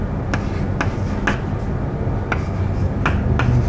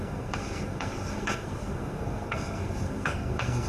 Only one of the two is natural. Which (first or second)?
first